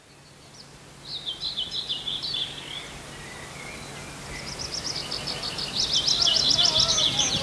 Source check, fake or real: real